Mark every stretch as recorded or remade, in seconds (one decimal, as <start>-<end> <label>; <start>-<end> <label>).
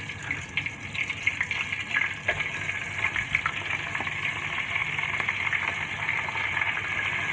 0.0-7.3 recorded